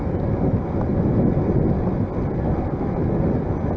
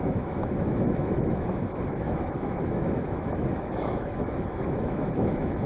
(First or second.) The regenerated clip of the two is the second